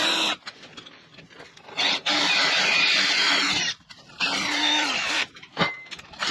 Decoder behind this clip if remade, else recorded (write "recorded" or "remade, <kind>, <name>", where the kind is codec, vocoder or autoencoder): remade, vocoder, BigVGAN v2